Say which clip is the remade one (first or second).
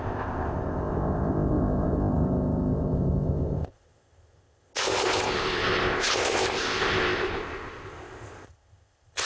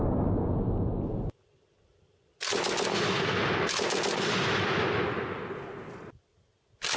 first